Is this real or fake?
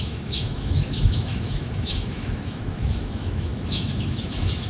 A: fake